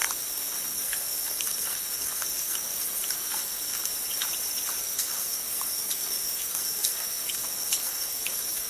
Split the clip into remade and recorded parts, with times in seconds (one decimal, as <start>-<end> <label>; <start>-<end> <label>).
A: 0.0-3.9 remade; 3.9-4.8 recorded; 4.8-8.7 remade